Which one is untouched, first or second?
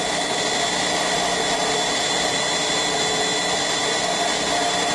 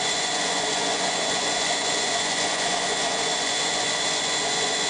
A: first